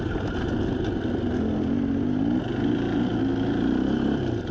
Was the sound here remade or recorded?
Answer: recorded